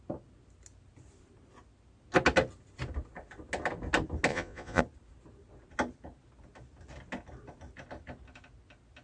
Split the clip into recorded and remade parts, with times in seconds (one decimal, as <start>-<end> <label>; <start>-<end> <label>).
0.0-4.3 recorded; 4.3-4.8 remade; 4.8-9.0 recorded